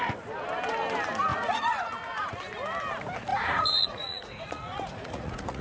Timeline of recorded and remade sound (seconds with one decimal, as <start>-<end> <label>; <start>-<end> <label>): 0.0-1.3 recorded; 1.3-2.3 remade; 2.3-3.3 recorded; 3.3-5.6 remade